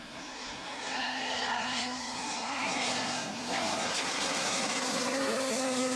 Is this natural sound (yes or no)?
no